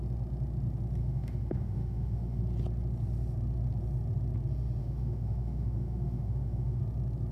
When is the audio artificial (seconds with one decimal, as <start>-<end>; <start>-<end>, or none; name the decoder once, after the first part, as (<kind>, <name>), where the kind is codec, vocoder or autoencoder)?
1.0-2.4 (autoencoder, DAC-VAE); 4.8-6.8